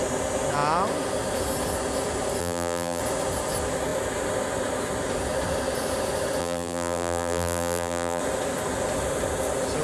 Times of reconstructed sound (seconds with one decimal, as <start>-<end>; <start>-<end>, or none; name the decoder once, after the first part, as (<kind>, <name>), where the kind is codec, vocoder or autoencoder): 2.4-3.0 (vocoder, BigVGAN v2); 6.4-8.2